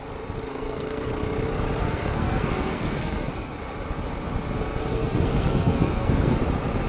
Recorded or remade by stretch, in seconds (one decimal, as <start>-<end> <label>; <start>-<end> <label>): 0.0-0.5 recorded; 0.5-1.1 remade; 1.1-1.8 recorded; 1.8-3.3 remade; 3.3-4.9 recorded; 4.9-6.4 remade; 6.4-6.9 recorded